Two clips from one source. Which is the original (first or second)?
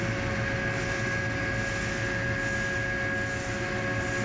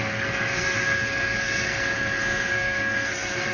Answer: first